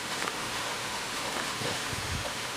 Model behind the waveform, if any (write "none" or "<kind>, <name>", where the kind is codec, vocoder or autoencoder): autoencoder, DAC-VAE